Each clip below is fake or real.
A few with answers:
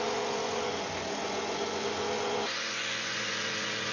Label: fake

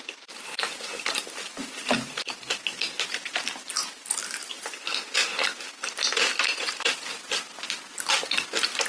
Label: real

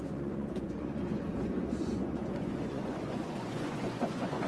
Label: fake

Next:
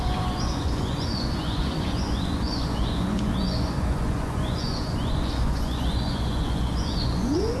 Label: fake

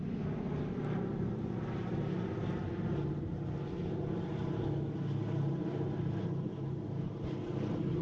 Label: real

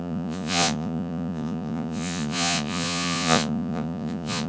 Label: fake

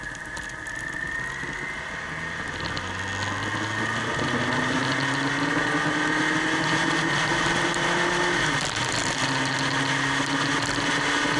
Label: real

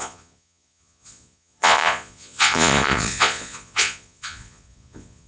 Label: fake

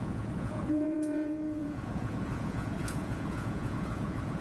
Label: fake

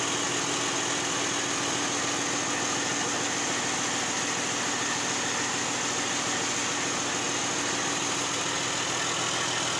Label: real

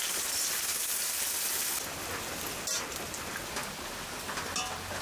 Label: real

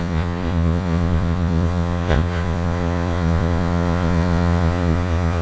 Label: fake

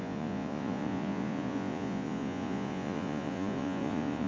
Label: fake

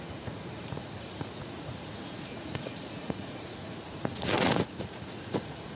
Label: fake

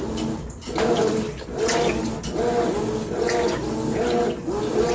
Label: real